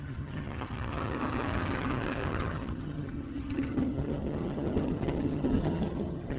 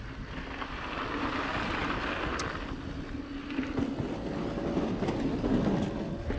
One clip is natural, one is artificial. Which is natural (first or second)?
second